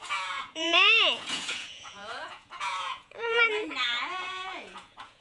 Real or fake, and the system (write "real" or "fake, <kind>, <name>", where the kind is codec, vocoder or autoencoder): fake, vocoder, Vocos